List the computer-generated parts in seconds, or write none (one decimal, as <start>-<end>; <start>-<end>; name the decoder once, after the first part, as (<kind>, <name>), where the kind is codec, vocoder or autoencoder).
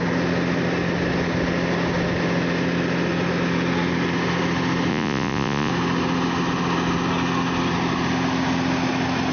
4.9-5.7 (vocoder, Vocos)